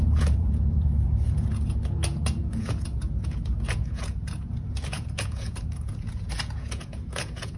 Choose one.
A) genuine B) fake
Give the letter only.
B